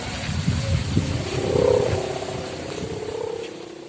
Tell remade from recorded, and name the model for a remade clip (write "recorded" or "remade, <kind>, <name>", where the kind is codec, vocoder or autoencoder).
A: recorded